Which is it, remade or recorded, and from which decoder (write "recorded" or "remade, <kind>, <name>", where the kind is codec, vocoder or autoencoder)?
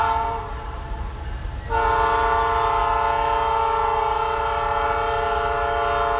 recorded